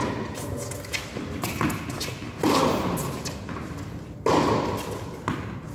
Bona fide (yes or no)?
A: yes